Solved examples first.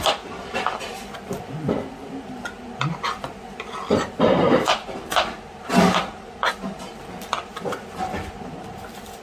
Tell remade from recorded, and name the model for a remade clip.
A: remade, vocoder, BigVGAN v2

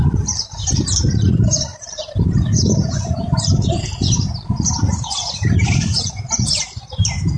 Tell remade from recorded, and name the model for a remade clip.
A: remade, vocoder, BigVGAN v2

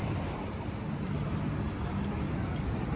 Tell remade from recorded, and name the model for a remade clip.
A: remade, vocoder, BigVGAN v2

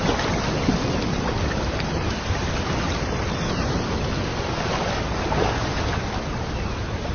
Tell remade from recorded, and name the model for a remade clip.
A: recorded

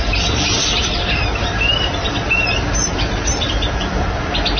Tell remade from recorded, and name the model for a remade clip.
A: remade, vocoder, BigVGAN v2